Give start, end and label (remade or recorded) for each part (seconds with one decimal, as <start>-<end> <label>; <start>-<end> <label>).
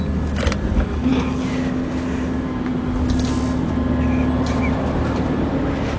0.0-6.0 recorded